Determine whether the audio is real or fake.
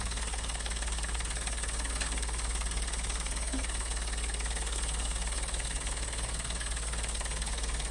fake